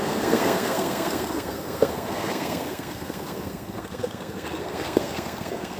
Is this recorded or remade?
remade